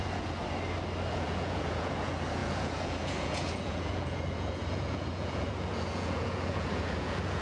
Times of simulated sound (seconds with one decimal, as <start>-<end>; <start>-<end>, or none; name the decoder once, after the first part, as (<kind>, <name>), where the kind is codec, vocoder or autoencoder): 0.0-0.4 (vocoder, Vocos); 1.1-7.4